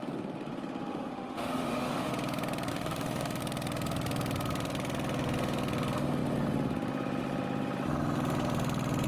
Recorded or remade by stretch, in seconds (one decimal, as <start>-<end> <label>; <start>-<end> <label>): 0.0-0.9 recorded; 0.9-2.1 remade; 2.1-2.7 recorded; 2.7-3.4 remade; 3.4-9.1 recorded